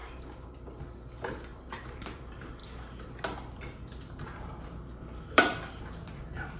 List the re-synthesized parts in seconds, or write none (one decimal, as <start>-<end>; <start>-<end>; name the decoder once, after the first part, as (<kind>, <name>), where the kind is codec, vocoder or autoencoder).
0.0-0.8 (vocoder, BigVGAN v2); 1.5-2.2